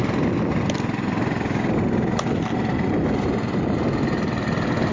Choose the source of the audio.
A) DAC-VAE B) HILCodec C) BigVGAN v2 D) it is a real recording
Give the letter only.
D